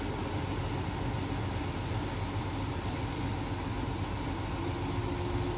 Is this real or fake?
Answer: real